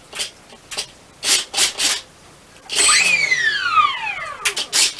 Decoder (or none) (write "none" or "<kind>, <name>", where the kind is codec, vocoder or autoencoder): none